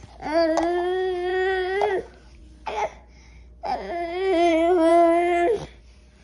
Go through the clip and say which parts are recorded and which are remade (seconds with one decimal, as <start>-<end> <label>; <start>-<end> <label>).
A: 0.0-6.2 recorded